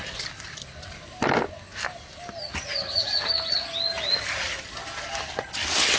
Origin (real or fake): real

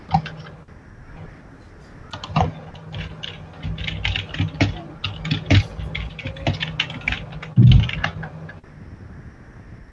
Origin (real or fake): real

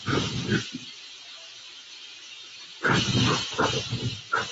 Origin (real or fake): real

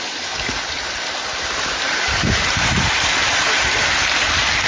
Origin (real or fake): real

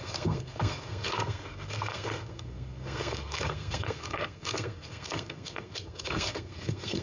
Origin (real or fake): fake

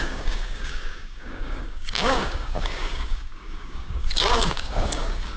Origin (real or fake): fake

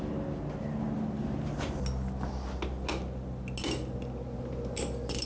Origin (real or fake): real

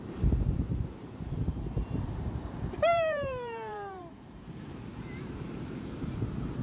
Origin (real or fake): fake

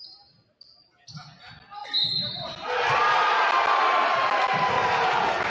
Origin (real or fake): real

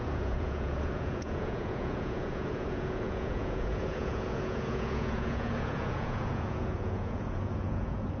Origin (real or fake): fake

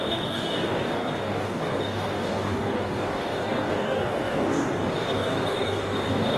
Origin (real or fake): fake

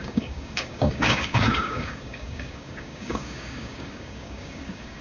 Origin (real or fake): fake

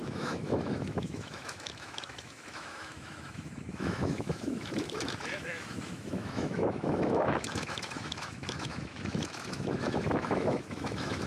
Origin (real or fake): fake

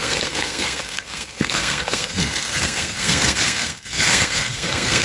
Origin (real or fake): fake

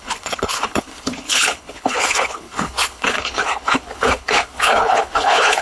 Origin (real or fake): fake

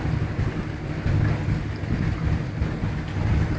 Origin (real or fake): real